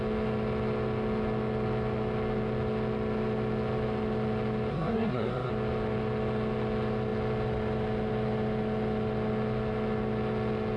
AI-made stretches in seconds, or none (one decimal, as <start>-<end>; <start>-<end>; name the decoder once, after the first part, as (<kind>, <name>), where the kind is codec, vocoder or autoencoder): 4.7-5.5 (codec, SNAC)